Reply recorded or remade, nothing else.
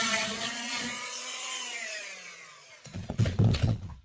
remade